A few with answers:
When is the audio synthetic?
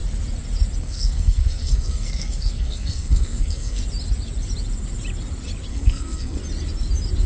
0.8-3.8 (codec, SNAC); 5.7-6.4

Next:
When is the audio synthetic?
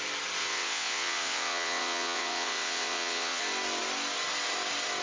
0.4-3.4 (vocoder, WaveNeXt)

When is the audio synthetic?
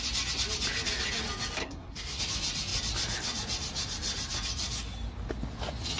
1.6-2.2 (codec, SNAC)